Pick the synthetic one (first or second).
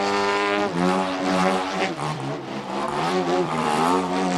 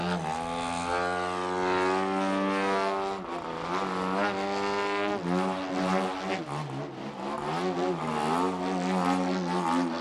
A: first